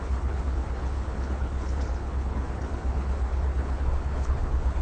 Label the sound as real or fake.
fake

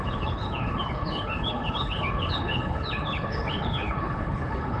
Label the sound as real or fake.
fake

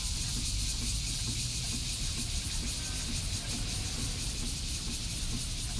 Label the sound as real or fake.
real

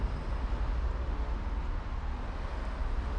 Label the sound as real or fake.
real